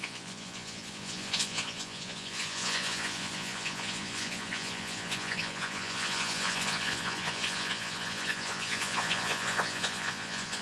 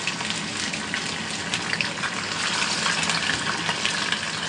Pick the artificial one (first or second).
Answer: first